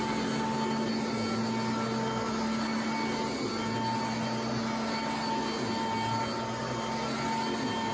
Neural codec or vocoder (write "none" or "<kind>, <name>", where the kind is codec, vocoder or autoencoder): none